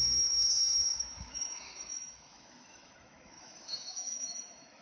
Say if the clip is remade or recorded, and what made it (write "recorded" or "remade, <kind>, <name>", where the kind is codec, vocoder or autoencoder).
remade, autoencoder, DAC-VAE